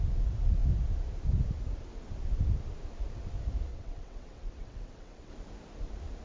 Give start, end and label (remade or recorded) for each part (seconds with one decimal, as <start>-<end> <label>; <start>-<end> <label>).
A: 0.0-3.7 recorded; 3.7-5.3 remade; 5.3-6.2 recorded